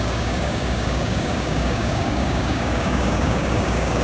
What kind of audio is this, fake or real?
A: fake